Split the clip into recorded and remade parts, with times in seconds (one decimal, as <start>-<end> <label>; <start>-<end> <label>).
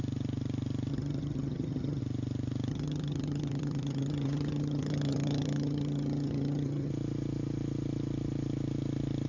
0.0-0.9 recorded; 0.9-2.0 remade; 2.0-2.7 recorded; 2.7-6.9 remade; 6.9-9.3 recorded